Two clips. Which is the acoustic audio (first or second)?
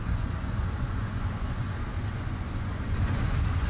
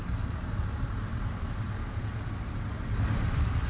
second